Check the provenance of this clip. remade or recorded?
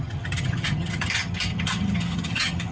remade